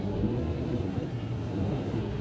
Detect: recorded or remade remade